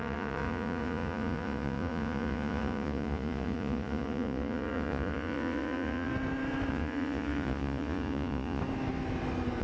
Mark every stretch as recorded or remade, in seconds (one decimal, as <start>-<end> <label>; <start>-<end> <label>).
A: 0.0-6.1 remade; 6.1-6.7 recorded; 6.7-8.6 remade; 8.6-9.6 recorded